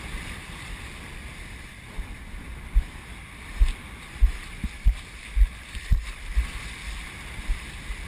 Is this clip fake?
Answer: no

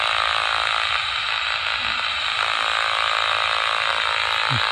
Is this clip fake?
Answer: no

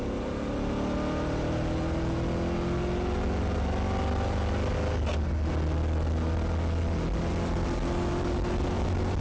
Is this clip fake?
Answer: no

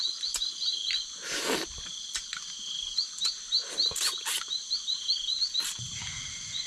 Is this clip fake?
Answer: no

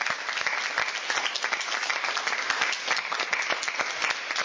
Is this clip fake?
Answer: yes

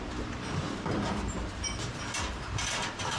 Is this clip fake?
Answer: yes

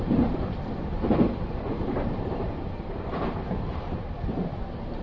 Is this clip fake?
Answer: yes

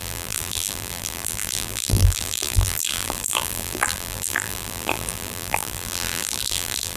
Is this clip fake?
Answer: yes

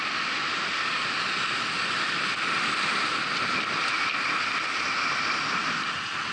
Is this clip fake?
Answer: no